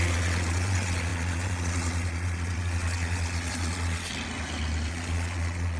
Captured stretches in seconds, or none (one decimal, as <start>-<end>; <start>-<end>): 4.1-4.9